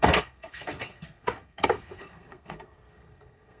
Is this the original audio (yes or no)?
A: no